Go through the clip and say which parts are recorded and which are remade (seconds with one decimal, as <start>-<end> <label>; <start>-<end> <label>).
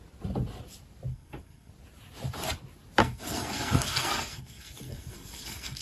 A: 0.0-1.1 recorded; 1.1-1.7 remade; 1.7-3.0 recorded; 3.0-5.8 remade